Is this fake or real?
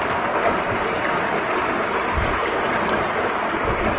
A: real